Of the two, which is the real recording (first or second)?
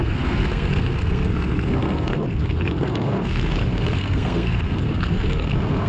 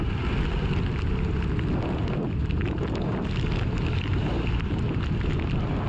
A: second